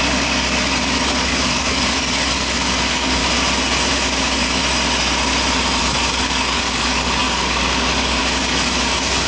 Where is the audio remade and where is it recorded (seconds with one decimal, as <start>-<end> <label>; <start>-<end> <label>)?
0.0-3.2 remade; 3.2-3.9 recorded; 3.9-4.6 remade; 4.6-5.8 recorded; 5.8-9.3 remade